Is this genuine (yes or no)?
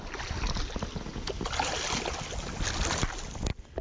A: yes